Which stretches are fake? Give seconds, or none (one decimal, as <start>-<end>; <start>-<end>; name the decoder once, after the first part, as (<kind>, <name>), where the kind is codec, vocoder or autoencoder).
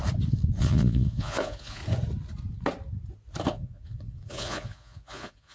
0.6-1.8 (vocoder, Vocos); 3.5-5.5